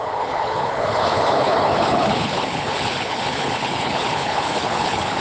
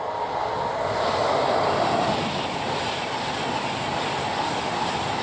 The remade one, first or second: first